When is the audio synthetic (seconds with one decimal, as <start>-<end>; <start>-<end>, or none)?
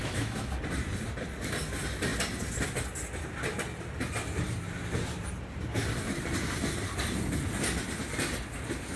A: 0.0-0.5